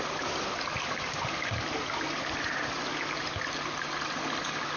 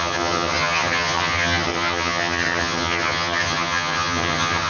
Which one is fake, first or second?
second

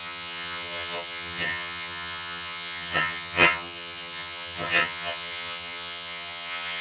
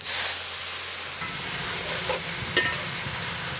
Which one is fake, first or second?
first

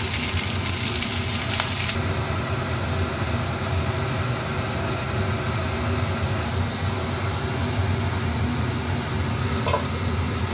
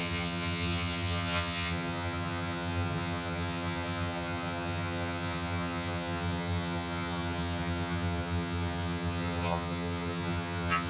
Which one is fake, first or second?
second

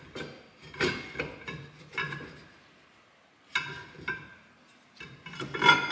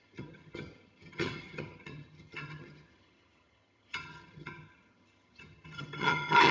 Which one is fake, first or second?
second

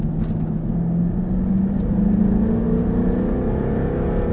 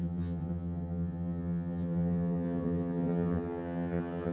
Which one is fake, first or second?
second